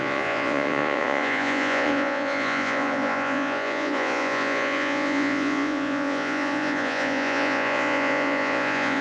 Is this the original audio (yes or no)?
no